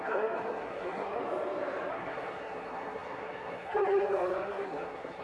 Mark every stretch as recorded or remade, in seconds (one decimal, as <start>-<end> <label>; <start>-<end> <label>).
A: 0.0-1.2 remade; 1.2-1.9 recorded; 1.9-5.2 remade